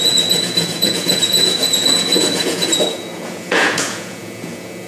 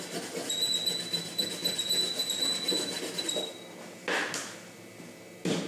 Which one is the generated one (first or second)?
first